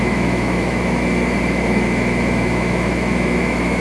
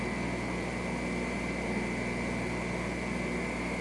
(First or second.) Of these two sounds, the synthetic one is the first